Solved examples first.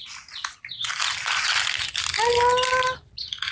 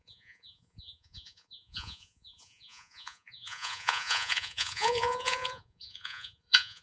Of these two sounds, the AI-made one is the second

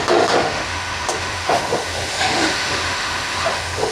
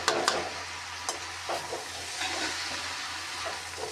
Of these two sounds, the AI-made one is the first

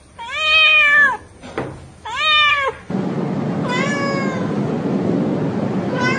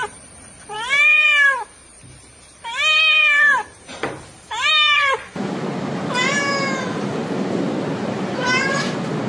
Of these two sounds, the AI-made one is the second